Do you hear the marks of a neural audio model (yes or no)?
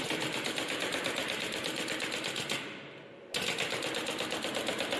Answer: no